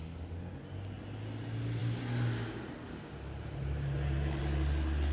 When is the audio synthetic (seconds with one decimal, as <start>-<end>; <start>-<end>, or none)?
none